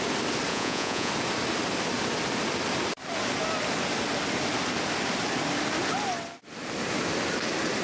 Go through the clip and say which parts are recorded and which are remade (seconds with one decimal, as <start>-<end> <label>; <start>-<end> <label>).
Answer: 0.0-0.5 recorded; 0.5-1.1 remade; 1.1-7.8 recorded